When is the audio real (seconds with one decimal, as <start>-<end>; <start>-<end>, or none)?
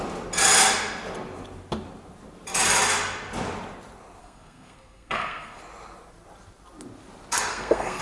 0.0-4.2; 5.6-7.5